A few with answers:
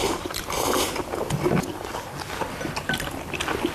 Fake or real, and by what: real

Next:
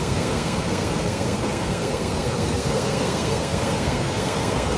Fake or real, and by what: fake, codec, SNAC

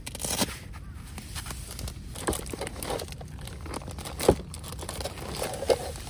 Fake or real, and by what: real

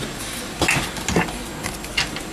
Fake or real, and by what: real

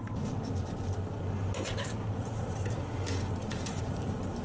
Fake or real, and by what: real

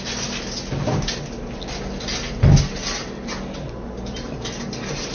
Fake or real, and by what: real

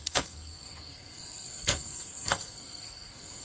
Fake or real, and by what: fake, codec, SNAC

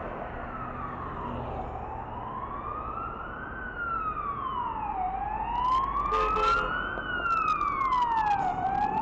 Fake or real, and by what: real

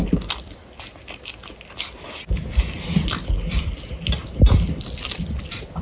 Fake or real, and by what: real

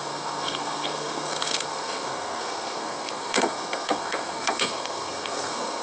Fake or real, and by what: fake, codec, SNAC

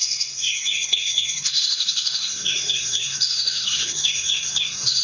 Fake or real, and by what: fake, codec, SNAC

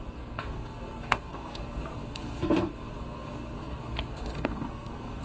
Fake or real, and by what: fake, codec, SNAC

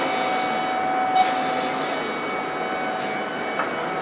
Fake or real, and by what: real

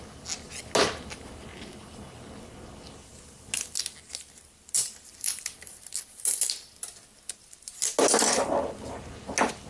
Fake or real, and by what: real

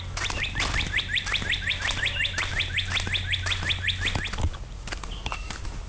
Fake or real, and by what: real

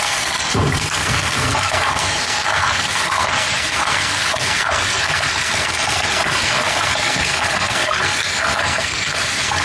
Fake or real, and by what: fake, codec, SNAC